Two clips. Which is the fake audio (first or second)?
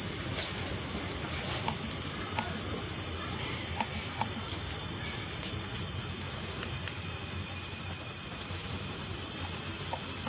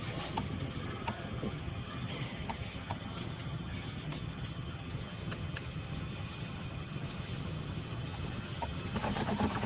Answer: second